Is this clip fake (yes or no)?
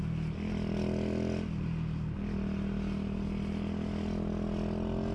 no